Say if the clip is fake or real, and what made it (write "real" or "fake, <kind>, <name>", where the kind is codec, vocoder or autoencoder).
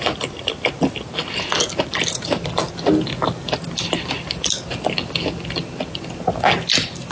real